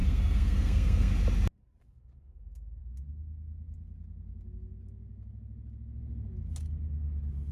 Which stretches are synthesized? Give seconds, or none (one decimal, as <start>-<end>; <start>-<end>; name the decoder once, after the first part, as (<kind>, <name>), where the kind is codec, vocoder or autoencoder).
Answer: 0.0-1.1 (codec, SNAC); 1.8-2.8